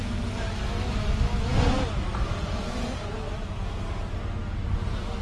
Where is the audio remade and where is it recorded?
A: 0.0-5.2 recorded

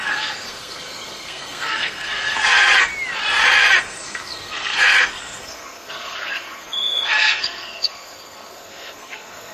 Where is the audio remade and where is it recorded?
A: 0.0-2.9 remade; 2.9-3.8 recorded; 3.8-9.5 remade

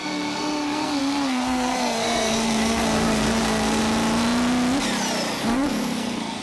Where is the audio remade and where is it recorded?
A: 0.0-3.8 remade; 3.8-5.4 recorded; 5.4-6.4 remade

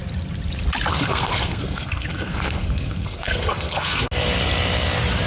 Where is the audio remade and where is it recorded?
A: 0.0-0.9 recorded; 0.9-4.1 remade; 4.1-5.3 recorded

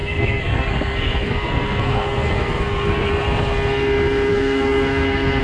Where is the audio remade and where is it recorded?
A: 0.0-3.1 remade; 3.1-4.3 recorded; 4.3-5.4 remade

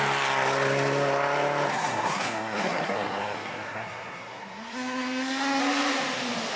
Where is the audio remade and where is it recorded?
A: 0.0-1.7 recorded; 1.7-5.6 remade; 5.6-6.6 recorded